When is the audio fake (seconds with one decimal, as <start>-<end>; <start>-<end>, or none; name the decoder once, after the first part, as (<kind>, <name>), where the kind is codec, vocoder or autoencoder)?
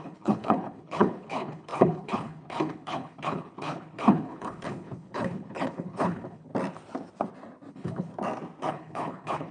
0.0-6.5 (codec, HILCodec); 7.7-8.1; 8.7-9.5